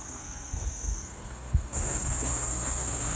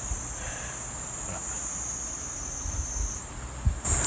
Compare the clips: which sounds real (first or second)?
second